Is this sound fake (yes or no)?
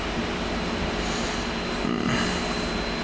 no